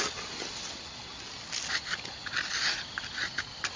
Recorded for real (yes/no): yes